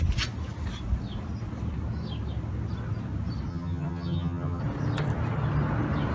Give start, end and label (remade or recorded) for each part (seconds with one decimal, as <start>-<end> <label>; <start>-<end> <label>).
0.0-3.5 recorded; 3.5-4.6 remade; 4.6-6.1 recorded